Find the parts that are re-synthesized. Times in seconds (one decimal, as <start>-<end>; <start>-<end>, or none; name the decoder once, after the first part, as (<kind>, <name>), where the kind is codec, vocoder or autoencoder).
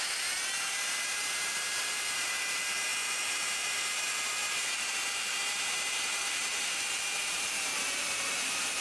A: 0.0-8.8 (vocoder, BigVGAN v2)